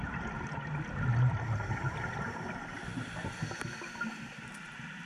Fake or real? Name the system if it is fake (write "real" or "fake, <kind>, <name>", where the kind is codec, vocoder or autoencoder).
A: real